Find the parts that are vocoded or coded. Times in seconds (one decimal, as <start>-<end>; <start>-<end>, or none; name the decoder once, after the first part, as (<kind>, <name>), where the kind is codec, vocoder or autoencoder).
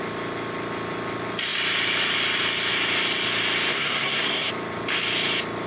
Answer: 3.7-4.5 (codec, SNAC)